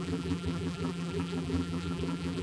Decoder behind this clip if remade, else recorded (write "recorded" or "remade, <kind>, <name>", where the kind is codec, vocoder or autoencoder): remade, vocoder, BigVGAN v2